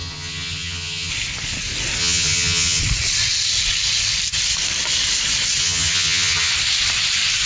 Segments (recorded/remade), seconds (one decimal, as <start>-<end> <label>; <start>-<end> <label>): 0.0-1.1 remade; 1.1-2.0 recorded; 2.0-2.8 remade; 2.8-5.6 recorded; 5.6-6.5 remade; 6.5-7.5 recorded